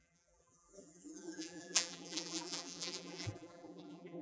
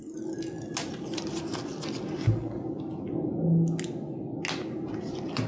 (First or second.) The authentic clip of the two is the second